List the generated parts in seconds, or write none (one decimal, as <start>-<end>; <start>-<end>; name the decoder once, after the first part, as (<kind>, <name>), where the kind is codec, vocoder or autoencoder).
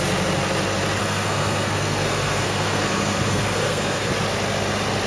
1.0-4.1 (codec, SNAC)